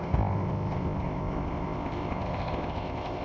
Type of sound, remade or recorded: remade